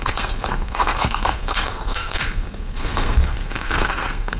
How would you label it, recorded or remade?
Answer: remade